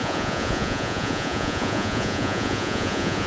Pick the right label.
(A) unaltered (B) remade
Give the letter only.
B